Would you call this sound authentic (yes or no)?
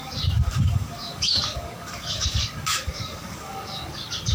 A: no